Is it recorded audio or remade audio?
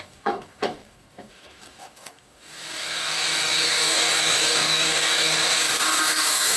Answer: remade